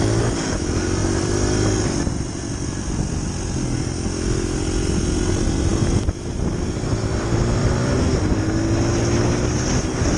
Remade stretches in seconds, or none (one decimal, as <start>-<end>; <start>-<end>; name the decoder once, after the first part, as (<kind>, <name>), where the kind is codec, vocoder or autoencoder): 1.0-1.7 (vocoder, BigVGAN v2); 5.7-6.3; 7.6-8.2